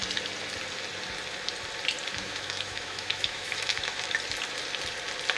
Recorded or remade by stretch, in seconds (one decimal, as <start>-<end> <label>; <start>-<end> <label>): 0.0-2.1 recorded; 2.1-4.1 remade; 4.1-5.4 recorded